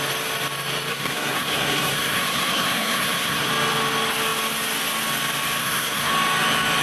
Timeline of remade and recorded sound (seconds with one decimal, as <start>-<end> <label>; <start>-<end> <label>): 0.0-0.9 recorded; 0.9-3.5 remade; 3.5-5.6 recorded; 5.6-6.1 remade; 6.1-6.8 recorded